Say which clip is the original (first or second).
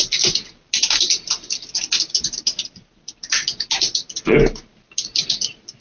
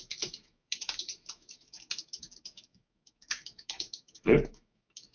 first